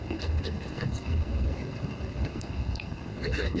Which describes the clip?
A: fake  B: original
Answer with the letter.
A